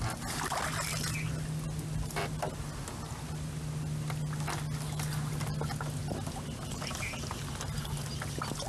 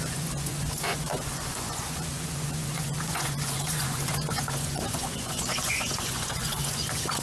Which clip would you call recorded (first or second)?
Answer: first